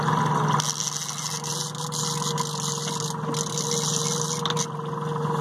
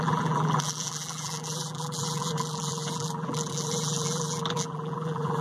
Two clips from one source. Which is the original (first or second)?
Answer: first